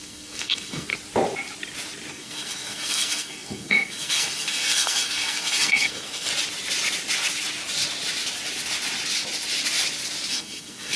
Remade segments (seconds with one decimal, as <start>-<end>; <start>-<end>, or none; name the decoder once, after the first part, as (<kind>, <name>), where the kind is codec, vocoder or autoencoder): 0.0-0.9 (codec, SNAC); 2.1-6.3; 10.3-11.0